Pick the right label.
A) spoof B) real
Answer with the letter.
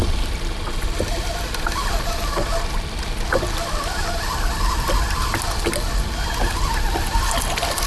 B